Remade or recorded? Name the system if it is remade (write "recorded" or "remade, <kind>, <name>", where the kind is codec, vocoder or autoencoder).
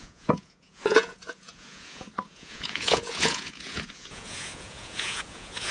remade, vocoder, Vocos